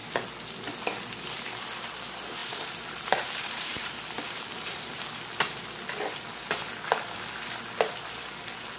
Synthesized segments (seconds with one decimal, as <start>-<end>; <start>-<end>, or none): 2.4-5.0